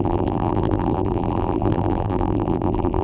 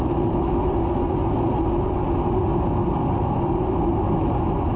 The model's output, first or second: first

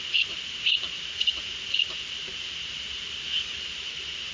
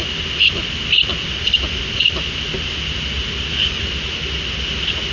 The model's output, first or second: first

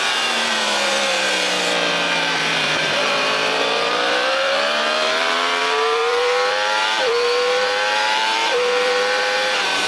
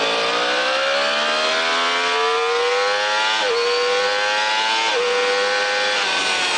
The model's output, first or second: first